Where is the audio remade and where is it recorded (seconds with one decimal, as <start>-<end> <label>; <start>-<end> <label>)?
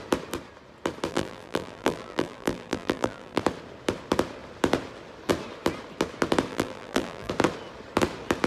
0.0-1.1 recorded; 1.1-3.4 remade; 3.4-6.5 recorded; 6.5-7.3 remade; 7.3-8.5 recorded